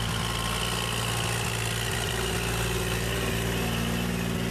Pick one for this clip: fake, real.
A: real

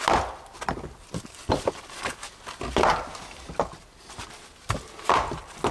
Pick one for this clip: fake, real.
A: real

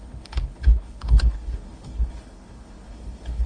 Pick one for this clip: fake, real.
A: fake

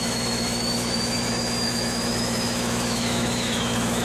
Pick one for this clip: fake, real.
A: fake